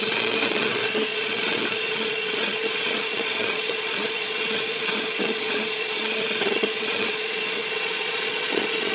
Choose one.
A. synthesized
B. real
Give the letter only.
A